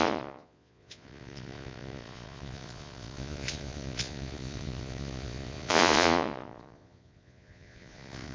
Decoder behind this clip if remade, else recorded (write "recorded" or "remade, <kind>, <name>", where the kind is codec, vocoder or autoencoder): remade, vocoder, Vocos